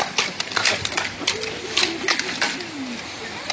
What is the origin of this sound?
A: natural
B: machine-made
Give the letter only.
B